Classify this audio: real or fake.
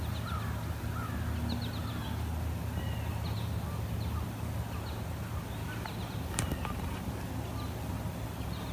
real